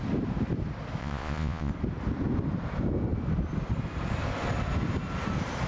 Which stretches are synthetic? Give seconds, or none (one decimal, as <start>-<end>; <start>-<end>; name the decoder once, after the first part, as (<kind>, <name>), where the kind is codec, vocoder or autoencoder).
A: 1.0-1.7 (vocoder, Vocos)